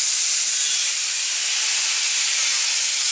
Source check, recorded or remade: recorded